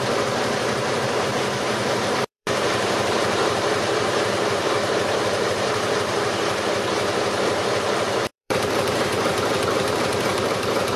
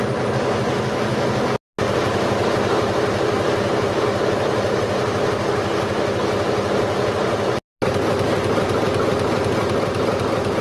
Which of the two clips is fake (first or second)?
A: first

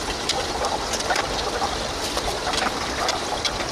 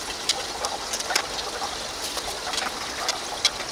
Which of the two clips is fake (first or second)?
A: first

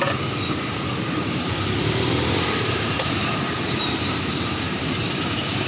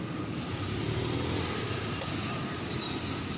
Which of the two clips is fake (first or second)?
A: first